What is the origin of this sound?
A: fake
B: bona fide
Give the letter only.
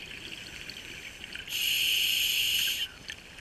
B